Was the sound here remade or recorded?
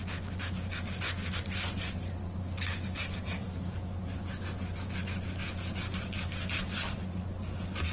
recorded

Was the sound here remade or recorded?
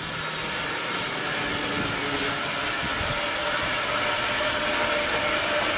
recorded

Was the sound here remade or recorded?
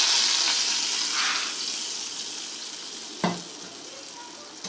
recorded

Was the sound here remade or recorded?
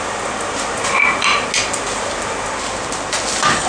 recorded